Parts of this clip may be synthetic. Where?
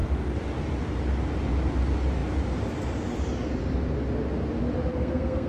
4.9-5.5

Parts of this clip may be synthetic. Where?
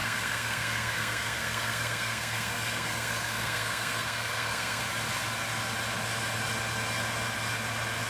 0.0-4.8